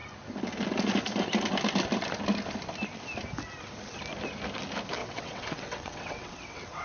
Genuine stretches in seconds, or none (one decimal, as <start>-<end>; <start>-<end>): 0.0-5.0